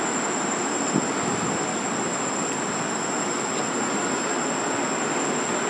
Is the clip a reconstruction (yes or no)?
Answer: no